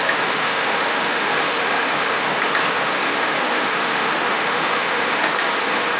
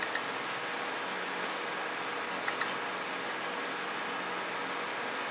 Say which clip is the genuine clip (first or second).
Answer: second